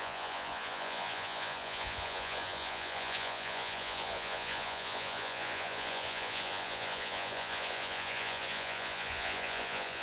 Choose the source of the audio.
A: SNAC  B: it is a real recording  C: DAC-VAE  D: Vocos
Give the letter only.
D